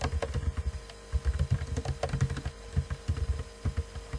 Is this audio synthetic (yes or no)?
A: no